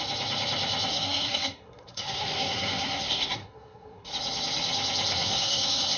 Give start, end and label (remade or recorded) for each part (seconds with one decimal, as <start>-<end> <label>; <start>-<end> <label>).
0.0-0.9 recorded; 0.9-4.1 remade; 4.1-5.1 recorded; 5.1-6.0 remade